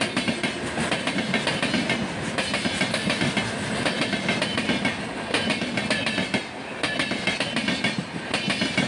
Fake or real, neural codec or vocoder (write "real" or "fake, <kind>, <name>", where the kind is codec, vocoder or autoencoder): real